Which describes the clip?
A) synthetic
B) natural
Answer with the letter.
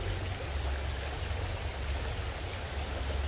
B